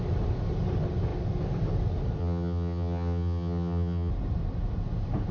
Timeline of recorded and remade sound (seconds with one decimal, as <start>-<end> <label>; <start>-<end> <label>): 0.0-2.2 recorded; 2.2-4.1 remade; 4.1-5.3 recorded